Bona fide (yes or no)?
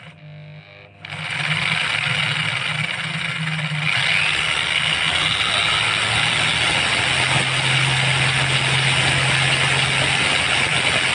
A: yes